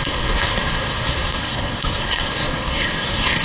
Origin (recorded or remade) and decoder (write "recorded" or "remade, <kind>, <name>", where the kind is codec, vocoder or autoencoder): remade, codec, SNAC